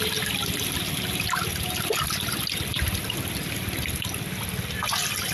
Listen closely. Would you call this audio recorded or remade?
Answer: recorded